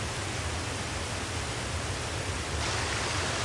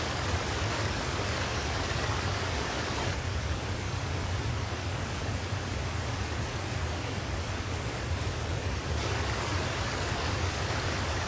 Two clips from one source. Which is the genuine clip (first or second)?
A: first